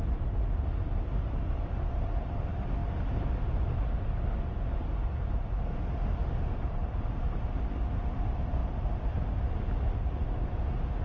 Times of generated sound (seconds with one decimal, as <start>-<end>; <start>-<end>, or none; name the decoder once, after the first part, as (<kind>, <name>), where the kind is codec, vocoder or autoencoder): none